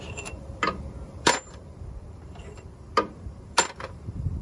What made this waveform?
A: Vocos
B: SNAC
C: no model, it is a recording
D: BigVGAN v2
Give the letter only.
D